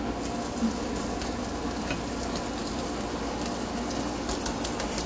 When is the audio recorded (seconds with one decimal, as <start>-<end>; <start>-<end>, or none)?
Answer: 0.0-5.1